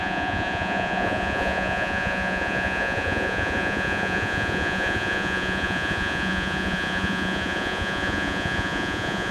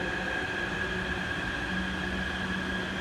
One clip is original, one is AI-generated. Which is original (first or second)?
second